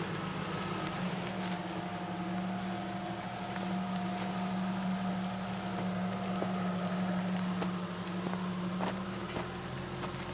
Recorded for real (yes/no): yes